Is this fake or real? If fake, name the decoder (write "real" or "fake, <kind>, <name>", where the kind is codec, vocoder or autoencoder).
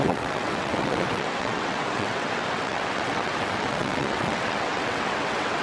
fake, vocoder, WaveNeXt